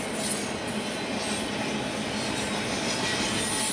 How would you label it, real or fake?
real